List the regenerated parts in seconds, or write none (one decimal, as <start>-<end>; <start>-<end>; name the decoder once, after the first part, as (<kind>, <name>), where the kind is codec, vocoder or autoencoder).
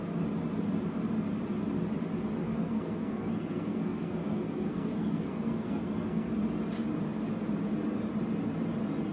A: 2.4-6.3 (codec, SNAC)